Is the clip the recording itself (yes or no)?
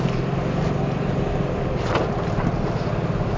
yes